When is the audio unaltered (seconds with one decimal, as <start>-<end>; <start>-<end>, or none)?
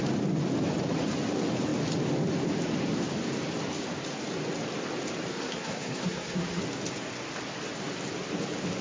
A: 0.0-5.3; 6.6-8.8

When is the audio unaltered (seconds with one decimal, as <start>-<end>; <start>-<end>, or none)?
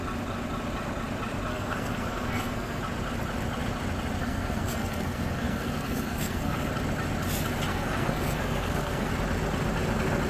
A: 0.0-1.5; 2.8-4.2; 6.7-7.7; 9.1-10.3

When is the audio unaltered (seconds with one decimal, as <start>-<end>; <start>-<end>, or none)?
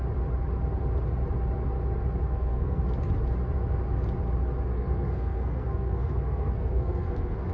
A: 0.0-2.3; 2.8-4.7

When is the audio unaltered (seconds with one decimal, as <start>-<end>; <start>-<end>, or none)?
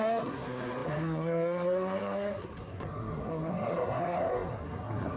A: none